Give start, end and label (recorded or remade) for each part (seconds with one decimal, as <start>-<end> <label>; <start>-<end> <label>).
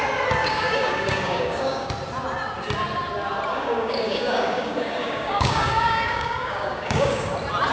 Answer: 0.0-0.4 recorded; 0.4-1.9 remade; 1.9-3.5 recorded; 3.5-7.3 remade; 7.3-7.7 recorded